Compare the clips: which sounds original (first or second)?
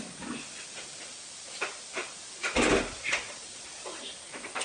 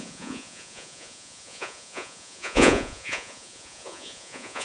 first